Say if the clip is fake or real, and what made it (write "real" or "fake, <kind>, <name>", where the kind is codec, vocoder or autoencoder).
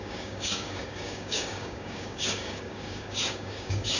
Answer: fake, codec, DAC